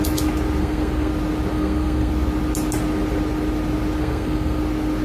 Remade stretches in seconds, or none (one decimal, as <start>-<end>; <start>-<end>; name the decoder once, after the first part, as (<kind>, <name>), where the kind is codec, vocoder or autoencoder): 0.6-1.1 (codec, SNAC); 1.5-2.1; 4.0-4.6